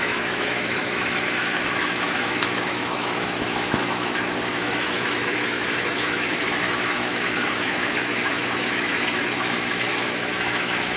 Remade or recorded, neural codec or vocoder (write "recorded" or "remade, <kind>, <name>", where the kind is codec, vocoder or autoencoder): remade, autoencoder, DAC-VAE